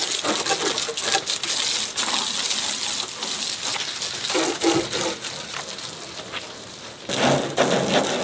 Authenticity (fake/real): real